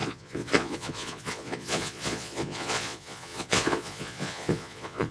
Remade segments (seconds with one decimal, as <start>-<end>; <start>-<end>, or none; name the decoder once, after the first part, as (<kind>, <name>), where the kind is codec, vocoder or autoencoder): 0.0-5.1 (vocoder, Vocos)